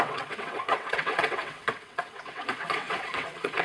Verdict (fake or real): fake